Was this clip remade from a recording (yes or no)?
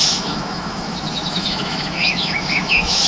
yes